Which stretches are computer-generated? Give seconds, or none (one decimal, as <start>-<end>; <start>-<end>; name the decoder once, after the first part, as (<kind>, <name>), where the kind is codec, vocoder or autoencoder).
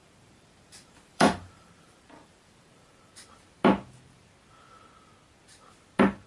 0.0-3.1 (vocoder, BigVGAN v2)